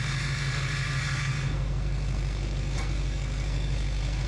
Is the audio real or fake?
fake